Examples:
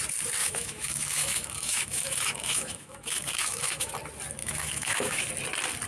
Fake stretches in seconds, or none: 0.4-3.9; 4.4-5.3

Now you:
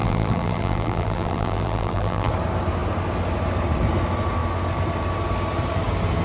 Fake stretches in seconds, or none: 0.0-2.3

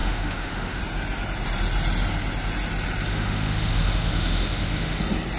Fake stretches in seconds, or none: 0.0-0.8; 3.1-5.0

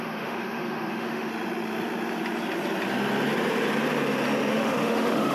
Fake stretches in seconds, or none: 0.0-1.3; 4.5-5.3